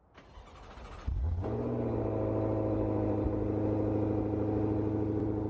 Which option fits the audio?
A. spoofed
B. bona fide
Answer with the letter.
B